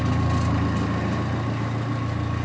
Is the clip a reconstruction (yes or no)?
no